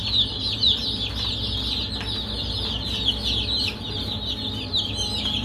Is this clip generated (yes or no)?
no